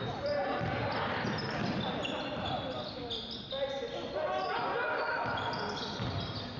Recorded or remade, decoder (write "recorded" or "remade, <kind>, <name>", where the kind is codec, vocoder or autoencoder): recorded